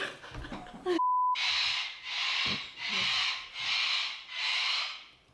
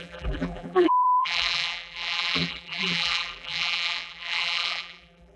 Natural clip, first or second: first